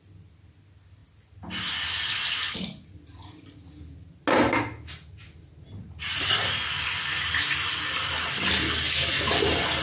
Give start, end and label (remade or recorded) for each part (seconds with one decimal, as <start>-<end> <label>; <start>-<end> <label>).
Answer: 0.0-9.8 recorded